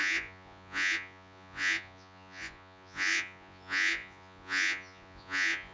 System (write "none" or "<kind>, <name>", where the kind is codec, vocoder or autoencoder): vocoder, Vocos